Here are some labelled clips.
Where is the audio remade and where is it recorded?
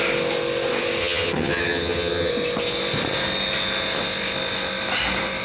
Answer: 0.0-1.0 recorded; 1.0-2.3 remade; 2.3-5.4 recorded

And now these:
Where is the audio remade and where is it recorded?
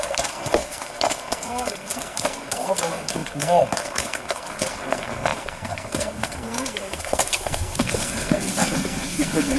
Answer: 0.0-9.6 remade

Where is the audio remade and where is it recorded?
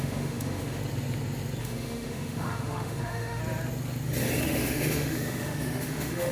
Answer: 0.0-0.8 remade; 0.8-1.6 recorded; 1.6-3.4 remade; 3.4-4.4 recorded; 4.4-6.3 remade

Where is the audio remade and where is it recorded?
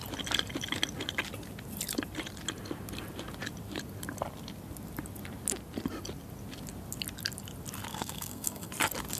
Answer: 0.0-7.9 recorded; 7.9-8.7 remade; 8.7-9.2 recorded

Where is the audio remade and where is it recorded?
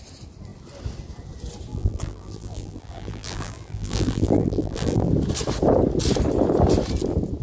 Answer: 0.0-1.7 recorded; 1.7-5.1 remade; 5.1-7.4 recorded